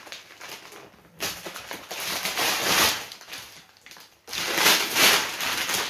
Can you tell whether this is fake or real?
real